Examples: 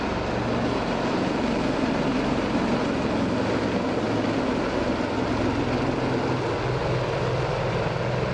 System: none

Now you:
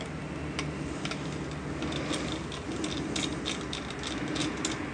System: none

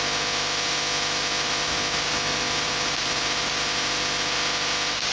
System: none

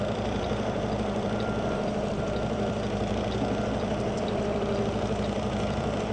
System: vocoder, BigVGAN v2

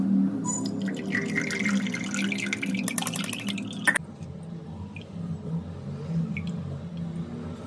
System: none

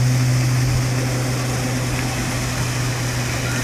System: none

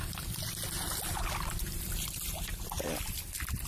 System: none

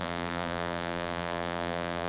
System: vocoder, BigVGAN v2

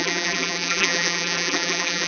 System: vocoder, BigVGAN v2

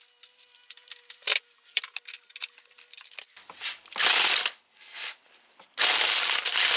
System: vocoder, BigVGAN v2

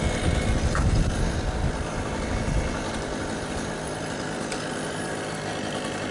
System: none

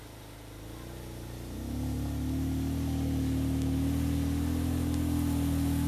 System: none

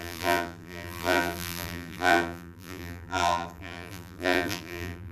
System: vocoder, BigVGAN v2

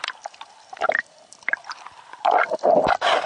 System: none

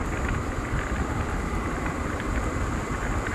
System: none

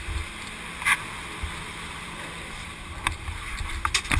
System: vocoder, BigVGAN v2